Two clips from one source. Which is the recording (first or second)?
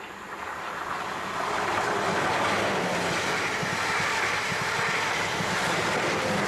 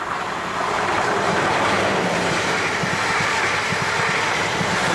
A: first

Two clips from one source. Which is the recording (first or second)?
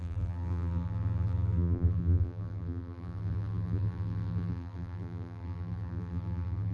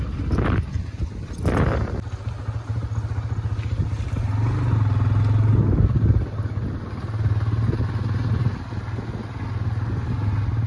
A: second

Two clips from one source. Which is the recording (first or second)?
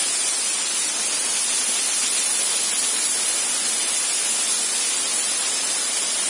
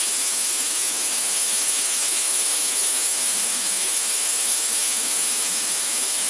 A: first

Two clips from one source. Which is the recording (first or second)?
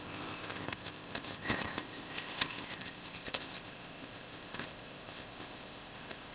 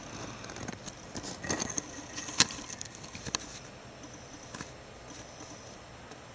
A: second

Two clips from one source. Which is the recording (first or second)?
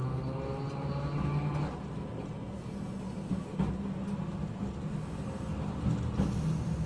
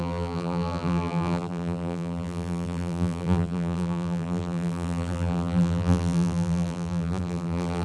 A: first